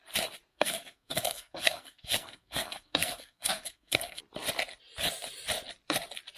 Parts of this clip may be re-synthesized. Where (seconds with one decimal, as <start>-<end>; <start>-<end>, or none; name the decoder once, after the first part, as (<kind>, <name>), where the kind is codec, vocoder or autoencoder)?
0.5-4.2 (codec, SNAC)

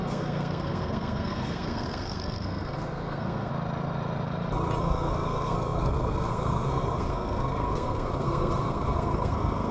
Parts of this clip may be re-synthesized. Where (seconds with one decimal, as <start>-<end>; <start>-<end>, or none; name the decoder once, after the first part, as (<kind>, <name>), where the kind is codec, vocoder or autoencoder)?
0.0-3.5 (codec, SNAC); 4.8-9.7

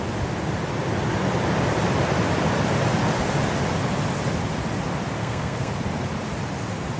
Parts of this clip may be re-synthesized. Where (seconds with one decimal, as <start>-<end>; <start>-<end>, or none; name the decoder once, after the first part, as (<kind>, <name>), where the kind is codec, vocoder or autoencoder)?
5.2-5.7 (codec, SNAC)